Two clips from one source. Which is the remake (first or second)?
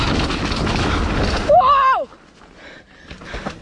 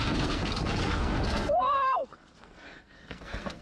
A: second